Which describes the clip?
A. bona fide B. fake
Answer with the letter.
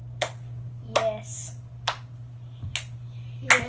A